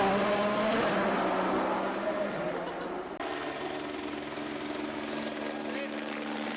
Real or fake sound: real